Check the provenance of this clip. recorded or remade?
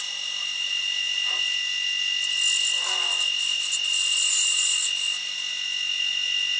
recorded